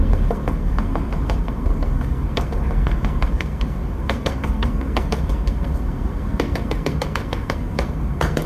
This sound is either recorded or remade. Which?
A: remade